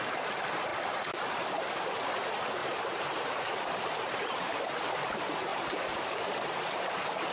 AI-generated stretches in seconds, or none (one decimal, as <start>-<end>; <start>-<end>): 2.6-4.6; 5.5-6.6

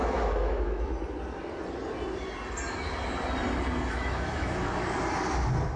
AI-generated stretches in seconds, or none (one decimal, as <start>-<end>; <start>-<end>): 0.0-0.9; 3.9-4.8

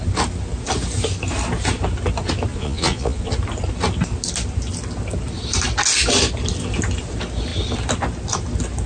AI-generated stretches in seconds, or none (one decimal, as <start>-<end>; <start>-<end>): 2.5-3.3

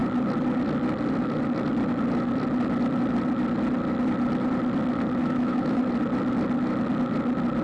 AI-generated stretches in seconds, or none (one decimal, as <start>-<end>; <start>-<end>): 5.2-5.8

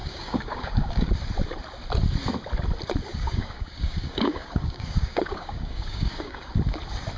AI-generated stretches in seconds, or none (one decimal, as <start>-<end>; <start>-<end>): 0.0-1.1; 3.1-6.5

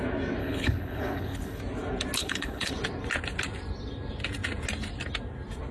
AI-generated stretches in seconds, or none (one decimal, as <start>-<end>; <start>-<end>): 0.4-1.6; 2.2-2.7

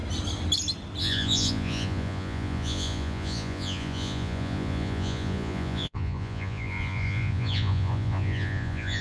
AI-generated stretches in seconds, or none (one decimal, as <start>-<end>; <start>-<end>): 1.0-9.0

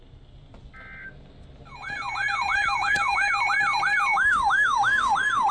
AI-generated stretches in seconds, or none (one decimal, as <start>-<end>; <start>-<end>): 2.5-3.3; 4.1-5.0